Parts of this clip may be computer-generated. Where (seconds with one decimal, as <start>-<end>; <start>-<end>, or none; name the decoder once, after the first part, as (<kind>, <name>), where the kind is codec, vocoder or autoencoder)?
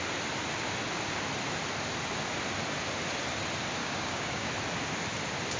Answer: 3.8-4.5 (codec, DAC)